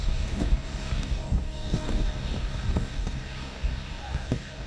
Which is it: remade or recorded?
remade